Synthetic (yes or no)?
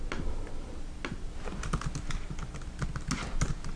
no